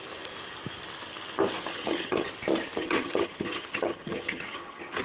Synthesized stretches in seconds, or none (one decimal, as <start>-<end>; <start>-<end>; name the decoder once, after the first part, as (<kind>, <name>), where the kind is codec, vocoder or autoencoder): 1.7-2.3 (vocoder, HiFi-GAN); 2.8-5.0